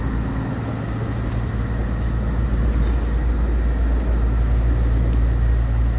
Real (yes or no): yes